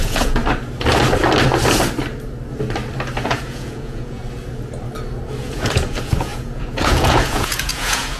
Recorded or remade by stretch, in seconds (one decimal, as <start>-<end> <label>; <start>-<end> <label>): 0.0-0.4 remade; 0.4-3.2 recorded; 3.2-4.2 remade; 4.2-5.4 recorded; 5.4-8.2 remade